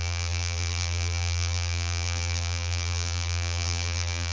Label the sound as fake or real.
fake